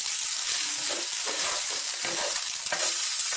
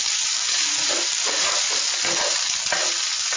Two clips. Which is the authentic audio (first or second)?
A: second